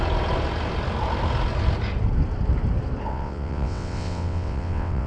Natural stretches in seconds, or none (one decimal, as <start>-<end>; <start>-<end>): 0.0-3.1